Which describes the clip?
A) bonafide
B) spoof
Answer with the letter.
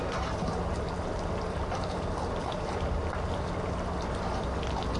B